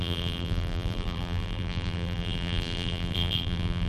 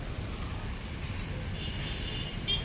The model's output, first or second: first